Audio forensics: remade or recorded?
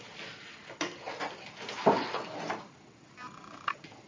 recorded